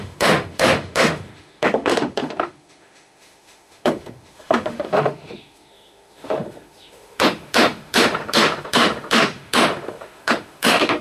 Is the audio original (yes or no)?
no